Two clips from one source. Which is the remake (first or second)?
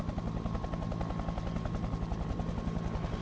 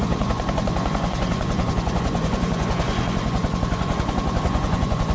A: second